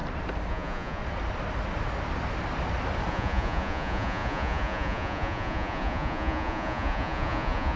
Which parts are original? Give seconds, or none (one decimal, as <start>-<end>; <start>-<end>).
0.0-0.5; 1.0-3.1